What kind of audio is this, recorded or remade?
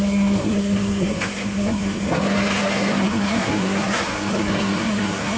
remade